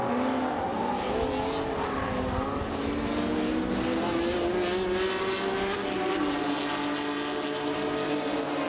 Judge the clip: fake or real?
real